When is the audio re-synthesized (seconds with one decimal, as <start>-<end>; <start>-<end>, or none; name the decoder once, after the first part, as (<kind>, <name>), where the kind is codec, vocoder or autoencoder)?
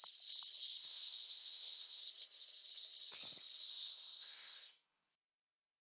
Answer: 0.7-2.0 (codec, SNAC); 3.7-5.1